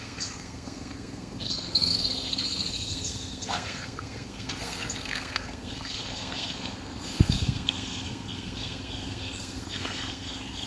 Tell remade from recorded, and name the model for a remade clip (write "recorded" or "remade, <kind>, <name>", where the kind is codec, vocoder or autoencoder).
remade, codec, SNAC